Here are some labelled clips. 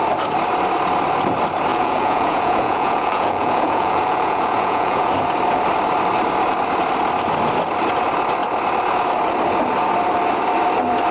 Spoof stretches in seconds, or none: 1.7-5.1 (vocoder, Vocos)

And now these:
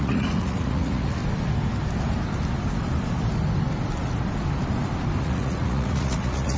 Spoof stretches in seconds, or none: 0.0-1.2 (vocoder, Vocos); 5.2-6.6

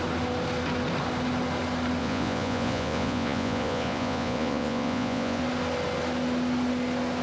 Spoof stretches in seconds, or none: 2.0-5.4 (vocoder, Vocos)

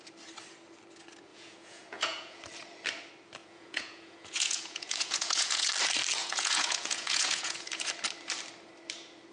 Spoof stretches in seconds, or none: 1.3-2.4 (vocoder, Vocos); 3.4-5.7; 6.2-7.8